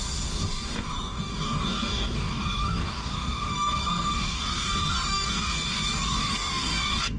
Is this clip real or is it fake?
fake